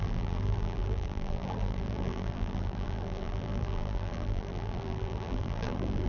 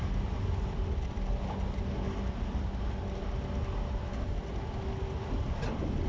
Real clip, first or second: second